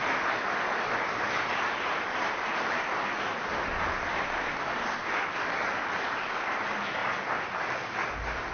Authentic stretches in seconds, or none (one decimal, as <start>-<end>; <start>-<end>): 0.0-8.5